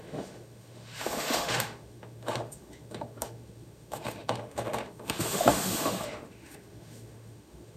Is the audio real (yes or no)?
no